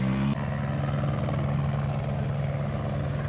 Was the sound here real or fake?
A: real